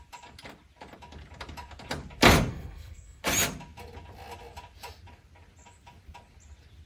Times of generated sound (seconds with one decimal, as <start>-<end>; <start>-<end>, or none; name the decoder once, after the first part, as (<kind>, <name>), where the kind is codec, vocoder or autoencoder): 2.5-3.2 (codec, SNAC)